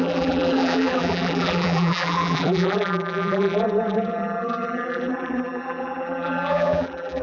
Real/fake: fake